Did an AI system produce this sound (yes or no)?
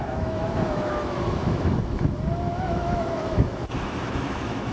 yes